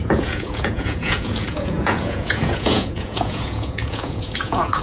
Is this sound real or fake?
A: fake